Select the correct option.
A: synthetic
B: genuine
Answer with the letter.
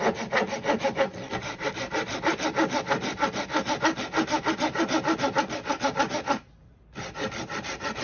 B